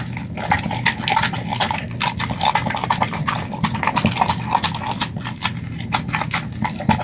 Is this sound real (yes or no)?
yes